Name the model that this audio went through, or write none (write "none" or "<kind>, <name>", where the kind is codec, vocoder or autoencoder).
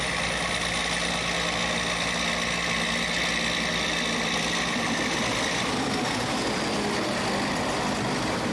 none